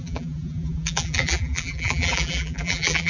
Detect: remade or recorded remade